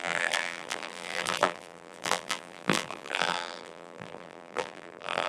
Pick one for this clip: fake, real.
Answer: fake